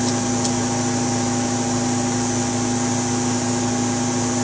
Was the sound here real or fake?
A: real